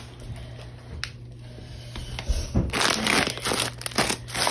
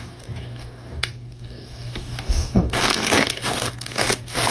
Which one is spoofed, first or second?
second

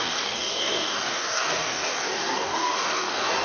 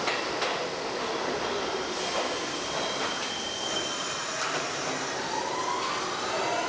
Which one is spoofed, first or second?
first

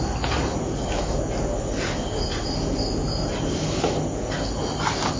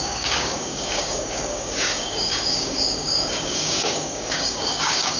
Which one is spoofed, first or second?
second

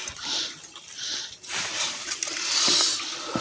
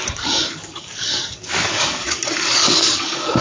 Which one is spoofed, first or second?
second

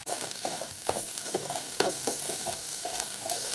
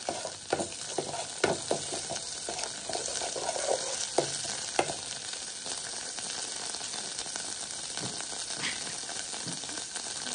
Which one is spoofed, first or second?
first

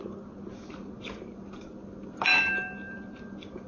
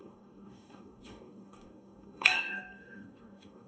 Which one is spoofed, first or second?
second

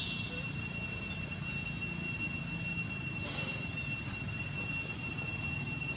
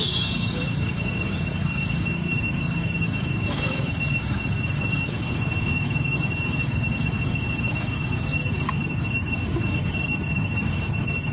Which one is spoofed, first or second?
second